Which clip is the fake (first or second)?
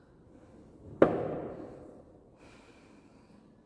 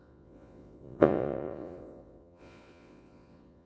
second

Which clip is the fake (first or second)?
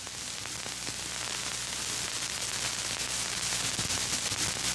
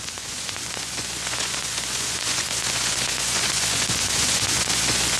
second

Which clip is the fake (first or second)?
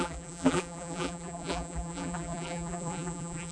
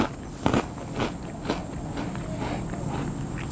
first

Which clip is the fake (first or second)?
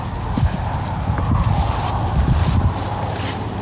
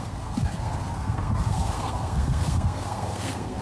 second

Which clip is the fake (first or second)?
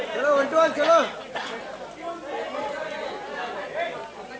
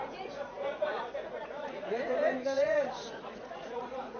second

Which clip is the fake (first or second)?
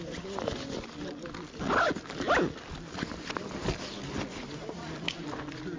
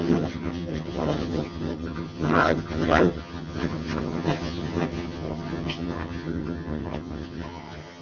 second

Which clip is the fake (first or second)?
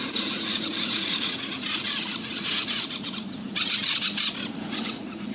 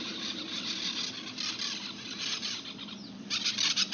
first